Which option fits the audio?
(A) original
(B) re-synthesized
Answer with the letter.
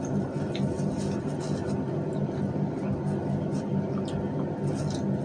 A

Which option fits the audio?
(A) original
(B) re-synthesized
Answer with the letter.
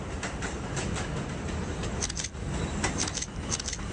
A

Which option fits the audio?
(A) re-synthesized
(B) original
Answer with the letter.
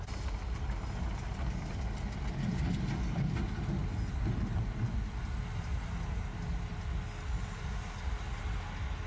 B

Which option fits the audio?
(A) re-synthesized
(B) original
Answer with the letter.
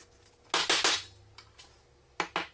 B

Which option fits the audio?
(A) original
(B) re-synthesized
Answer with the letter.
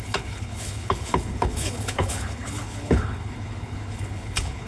B